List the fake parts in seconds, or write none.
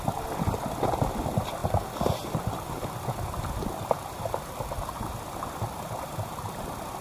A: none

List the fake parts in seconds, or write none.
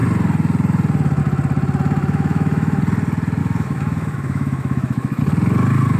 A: 2.0-2.8 (autoencoder, DAC-VAE); 3.4-5.2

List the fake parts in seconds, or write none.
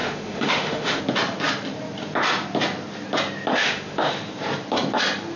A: 0.0-1.0 (autoencoder, DAC-VAE); 3.5-4.1